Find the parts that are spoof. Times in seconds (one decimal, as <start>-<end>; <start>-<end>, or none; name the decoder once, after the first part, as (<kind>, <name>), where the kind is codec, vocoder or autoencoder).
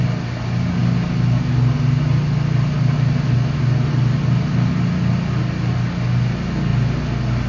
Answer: none